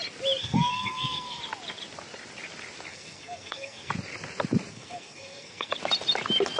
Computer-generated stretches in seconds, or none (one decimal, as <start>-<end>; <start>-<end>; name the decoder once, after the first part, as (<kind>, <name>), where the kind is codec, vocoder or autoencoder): 0.4-1.4 (codec, SNAC); 2.9-3.9; 4.7-5.7